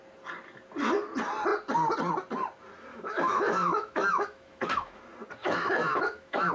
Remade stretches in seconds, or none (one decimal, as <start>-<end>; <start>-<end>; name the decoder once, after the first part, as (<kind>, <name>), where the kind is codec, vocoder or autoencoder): 2.9-5.0 (autoencoder, DAC-VAE); 5.4-6.5